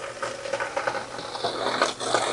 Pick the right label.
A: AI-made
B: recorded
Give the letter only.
B